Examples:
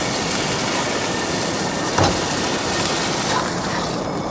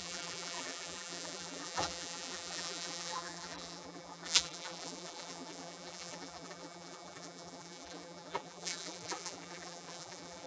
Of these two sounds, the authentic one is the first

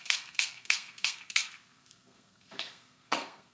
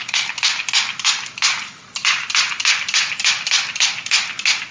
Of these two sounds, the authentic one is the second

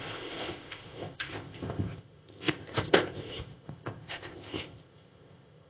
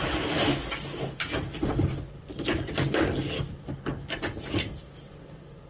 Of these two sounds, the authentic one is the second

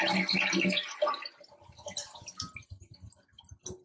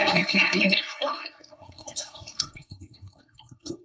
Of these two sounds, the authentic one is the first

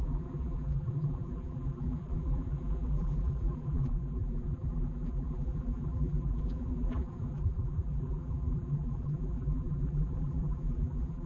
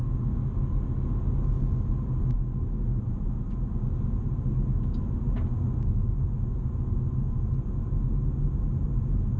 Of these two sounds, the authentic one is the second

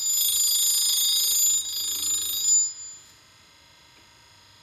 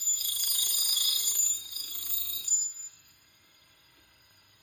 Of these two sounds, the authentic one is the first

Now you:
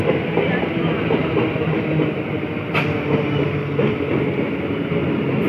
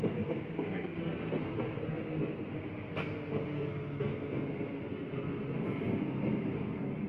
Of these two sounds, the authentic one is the first